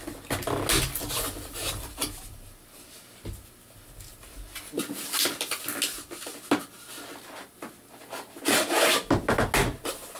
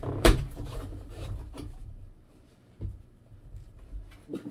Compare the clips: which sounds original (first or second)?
first